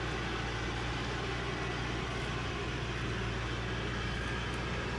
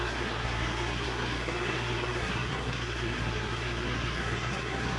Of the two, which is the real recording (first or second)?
first